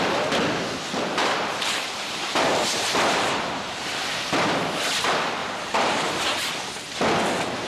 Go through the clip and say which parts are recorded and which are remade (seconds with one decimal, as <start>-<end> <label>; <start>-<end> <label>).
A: 0.0-1.2 recorded; 1.2-4.0 remade; 4.0-5.4 recorded; 5.4-6.2 remade; 6.2-7.7 recorded